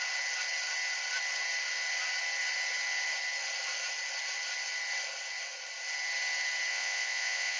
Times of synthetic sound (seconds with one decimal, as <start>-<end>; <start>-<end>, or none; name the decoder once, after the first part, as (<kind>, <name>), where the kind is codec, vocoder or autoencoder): 6.7-7.6 (vocoder, Vocos)